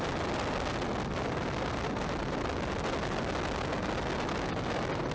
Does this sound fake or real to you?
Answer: real